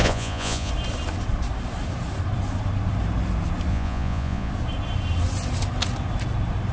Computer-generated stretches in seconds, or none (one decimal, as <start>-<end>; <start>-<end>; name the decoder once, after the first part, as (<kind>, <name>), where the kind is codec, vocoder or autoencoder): 0.0-0.7 (vocoder, Vocos); 3.7-4.5